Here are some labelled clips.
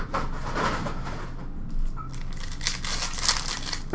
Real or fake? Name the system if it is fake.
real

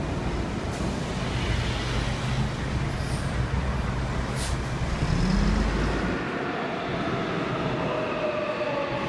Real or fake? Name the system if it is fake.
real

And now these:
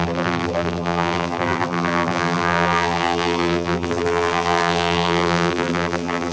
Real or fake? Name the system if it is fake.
fake, vocoder, BigVGAN v2